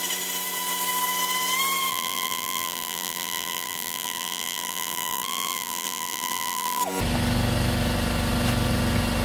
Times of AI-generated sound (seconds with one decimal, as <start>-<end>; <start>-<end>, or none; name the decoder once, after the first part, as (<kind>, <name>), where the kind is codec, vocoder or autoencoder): 1.9-6.8 (vocoder, BigVGAN v2)